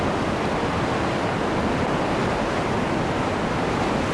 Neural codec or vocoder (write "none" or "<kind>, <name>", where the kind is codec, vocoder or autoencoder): none